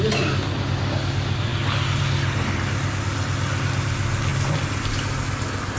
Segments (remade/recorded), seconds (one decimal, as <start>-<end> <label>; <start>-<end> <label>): 0.0-5.8 recorded